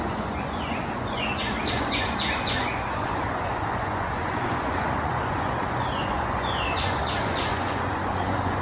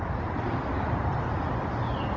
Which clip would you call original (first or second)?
second